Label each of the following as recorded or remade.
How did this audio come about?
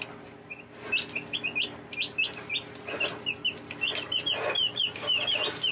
recorded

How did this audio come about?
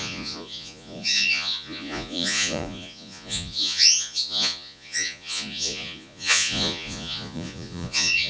remade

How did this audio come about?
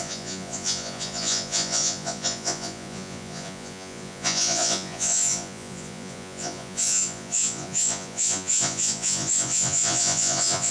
remade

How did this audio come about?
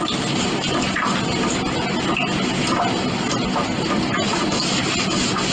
recorded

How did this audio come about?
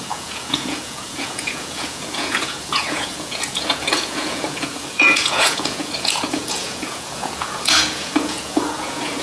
remade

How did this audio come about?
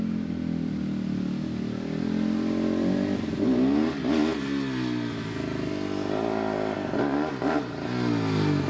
recorded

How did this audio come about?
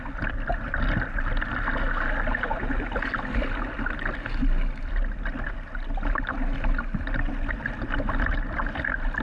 recorded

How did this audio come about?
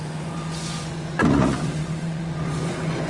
remade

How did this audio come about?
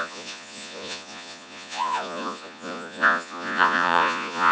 remade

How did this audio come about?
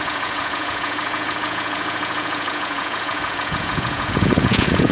remade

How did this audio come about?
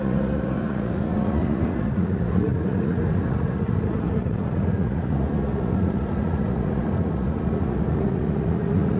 remade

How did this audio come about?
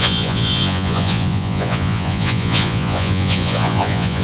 remade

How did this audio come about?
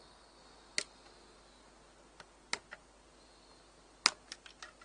recorded